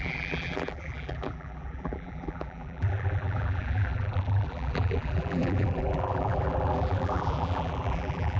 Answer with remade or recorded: remade